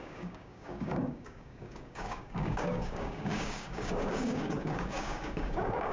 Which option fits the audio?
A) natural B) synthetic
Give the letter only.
B